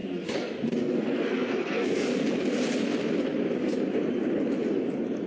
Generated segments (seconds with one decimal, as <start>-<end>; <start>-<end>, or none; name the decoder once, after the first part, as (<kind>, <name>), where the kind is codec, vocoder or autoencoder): 0.8-2.1 (codec, SNAC)